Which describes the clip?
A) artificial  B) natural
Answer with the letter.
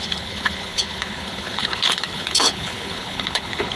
A